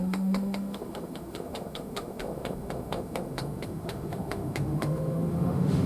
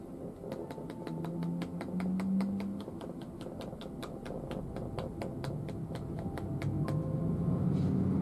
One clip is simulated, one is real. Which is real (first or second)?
second